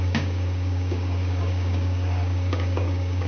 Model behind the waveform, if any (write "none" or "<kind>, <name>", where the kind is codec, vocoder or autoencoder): codec, DAC